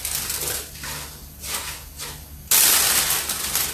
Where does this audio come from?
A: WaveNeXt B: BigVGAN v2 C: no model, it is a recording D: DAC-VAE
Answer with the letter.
C